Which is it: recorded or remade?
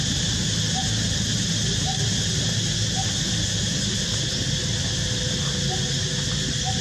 recorded